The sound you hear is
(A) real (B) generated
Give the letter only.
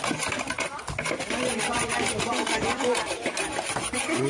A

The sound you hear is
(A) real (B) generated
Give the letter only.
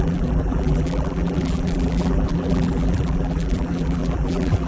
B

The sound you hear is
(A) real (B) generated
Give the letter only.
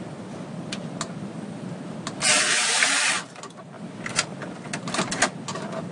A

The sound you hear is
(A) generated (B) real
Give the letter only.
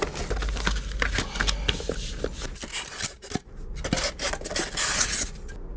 B